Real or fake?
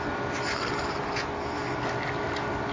real